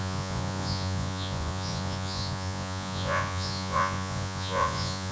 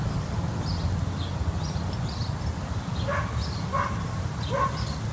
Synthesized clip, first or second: first